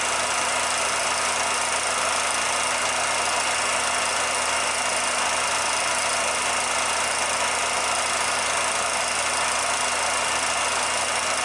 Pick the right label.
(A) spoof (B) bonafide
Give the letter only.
B